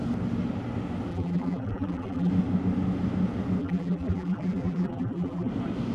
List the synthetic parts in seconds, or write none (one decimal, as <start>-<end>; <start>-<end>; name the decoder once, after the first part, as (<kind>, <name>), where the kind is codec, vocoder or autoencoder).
1.1-2.3 (vocoder, BigVGAN v2); 3.6-5.5